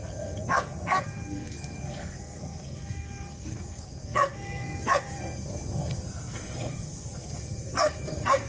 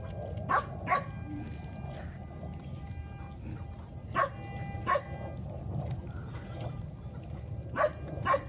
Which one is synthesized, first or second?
first